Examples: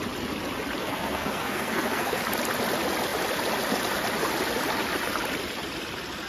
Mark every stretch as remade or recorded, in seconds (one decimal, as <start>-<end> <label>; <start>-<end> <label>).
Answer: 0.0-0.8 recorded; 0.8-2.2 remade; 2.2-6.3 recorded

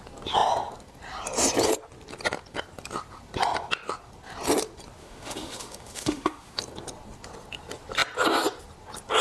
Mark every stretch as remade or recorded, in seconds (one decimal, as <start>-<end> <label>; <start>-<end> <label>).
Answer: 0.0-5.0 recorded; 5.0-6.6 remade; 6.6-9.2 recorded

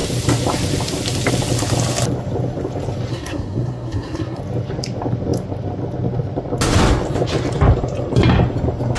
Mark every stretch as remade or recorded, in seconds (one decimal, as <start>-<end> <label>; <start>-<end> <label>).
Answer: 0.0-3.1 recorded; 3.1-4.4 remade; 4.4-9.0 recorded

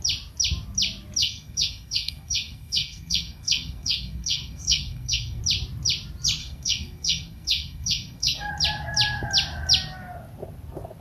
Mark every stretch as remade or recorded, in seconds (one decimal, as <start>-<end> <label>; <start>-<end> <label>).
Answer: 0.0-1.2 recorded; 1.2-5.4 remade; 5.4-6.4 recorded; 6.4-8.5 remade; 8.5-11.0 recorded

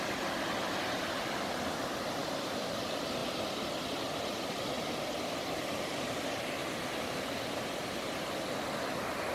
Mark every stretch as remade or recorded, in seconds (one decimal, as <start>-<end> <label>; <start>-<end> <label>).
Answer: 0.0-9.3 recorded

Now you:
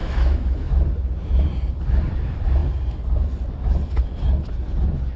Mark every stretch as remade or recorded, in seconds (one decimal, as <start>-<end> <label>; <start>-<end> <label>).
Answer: 0.0-0.7 remade; 0.7-5.2 recorded

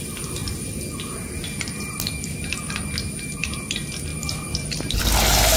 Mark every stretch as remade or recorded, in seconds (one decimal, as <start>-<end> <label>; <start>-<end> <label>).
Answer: 0.0-4.1 recorded; 4.1-5.0 remade; 5.0-5.6 recorded